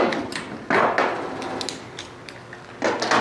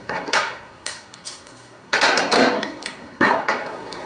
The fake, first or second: second